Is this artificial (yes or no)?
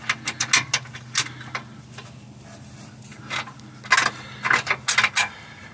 no